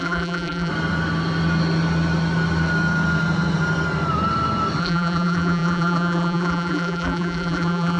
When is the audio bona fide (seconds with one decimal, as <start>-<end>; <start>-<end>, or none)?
0.7-4.8